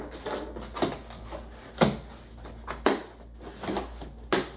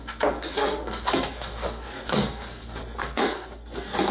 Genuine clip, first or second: first